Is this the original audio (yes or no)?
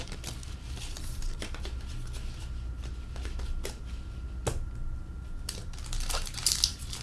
yes